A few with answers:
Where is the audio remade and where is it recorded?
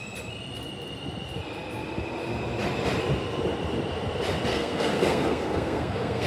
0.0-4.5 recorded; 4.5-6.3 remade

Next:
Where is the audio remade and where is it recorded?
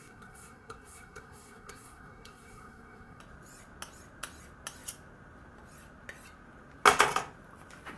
0.0-3.2 remade; 3.2-8.0 recorded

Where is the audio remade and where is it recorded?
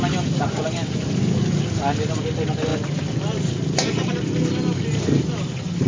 0.0-2.7 recorded; 2.7-4.1 remade; 4.1-5.9 recorded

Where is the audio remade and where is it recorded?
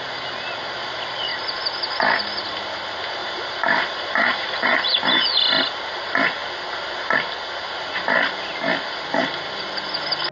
0.0-3.2 recorded; 3.2-4.7 remade; 4.7-10.3 recorded